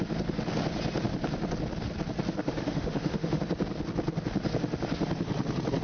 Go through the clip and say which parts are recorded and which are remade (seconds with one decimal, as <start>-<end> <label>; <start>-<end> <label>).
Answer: 0.0-2.4 recorded; 2.4-3.4 remade; 3.4-5.8 recorded